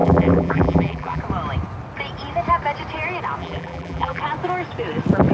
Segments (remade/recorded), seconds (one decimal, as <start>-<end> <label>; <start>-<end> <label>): 0.0-1.2 remade; 1.2-3.4 recorded; 3.4-4.2 remade; 4.2-5.3 recorded